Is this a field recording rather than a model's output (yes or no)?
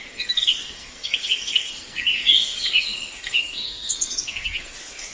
no